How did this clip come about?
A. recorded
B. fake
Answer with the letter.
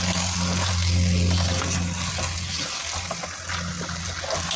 A